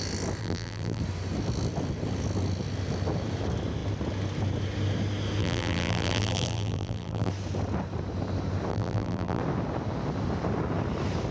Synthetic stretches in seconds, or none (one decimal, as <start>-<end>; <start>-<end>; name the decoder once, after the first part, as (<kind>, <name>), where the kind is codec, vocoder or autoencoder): 0.4-1.0 (vocoder, BigVGAN v2); 5.4-7.3; 8.7-9.4